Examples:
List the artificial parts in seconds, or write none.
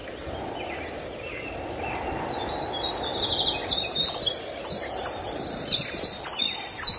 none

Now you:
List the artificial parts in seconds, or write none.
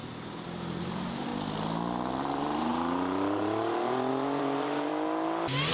0.8-1.3 (vocoder, BigVGAN v2); 2.2-4.9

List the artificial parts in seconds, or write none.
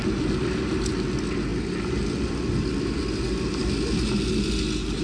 none